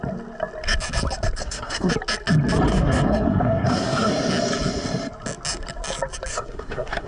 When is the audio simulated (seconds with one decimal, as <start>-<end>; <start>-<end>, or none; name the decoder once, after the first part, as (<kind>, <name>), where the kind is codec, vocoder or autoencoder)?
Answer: 1.4-1.9 (codec, SNAC); 2.7-4.1; 6.3-7.1